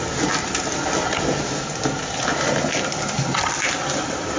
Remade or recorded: recorded